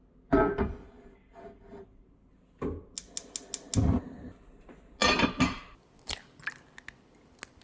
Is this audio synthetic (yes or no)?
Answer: no